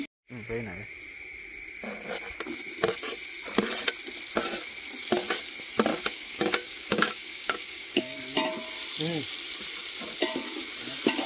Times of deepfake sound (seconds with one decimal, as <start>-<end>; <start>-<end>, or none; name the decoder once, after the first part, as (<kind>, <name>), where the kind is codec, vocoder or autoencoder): 5.9-8.2 (codec, DAC)